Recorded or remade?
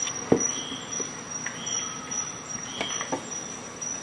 recorded